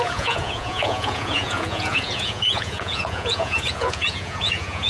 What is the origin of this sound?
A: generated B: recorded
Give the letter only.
A